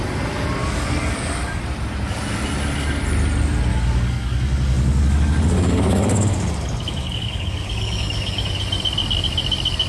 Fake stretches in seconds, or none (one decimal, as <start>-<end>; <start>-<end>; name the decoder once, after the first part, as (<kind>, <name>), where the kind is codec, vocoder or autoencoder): 0.6-1.6 (codec, DAC); 3.7-8.5